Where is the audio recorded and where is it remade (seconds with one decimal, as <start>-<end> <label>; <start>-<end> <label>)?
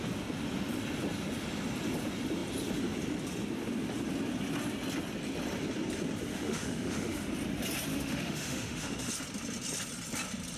0.0-6.3 recorded; 6.3-7.3 remade; 7.3-7.9 recorded; 7.9-9.1 remade; 9.1-10.6 recorded